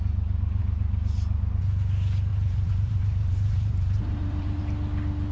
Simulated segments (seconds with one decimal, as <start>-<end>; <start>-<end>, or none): 2.3-4.6